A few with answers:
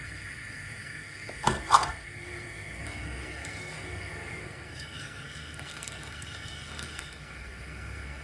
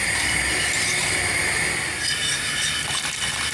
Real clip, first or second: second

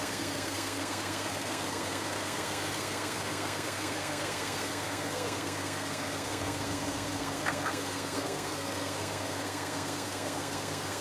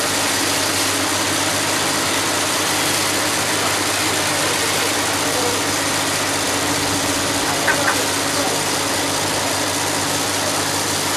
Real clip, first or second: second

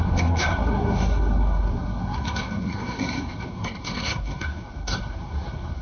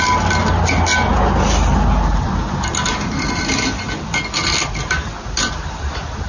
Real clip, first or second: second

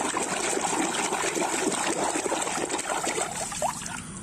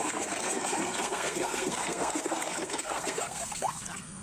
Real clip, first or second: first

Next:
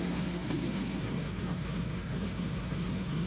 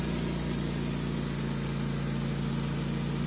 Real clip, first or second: second